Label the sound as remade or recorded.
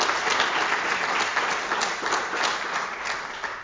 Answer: recorded